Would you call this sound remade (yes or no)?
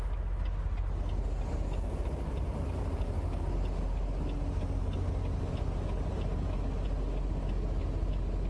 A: no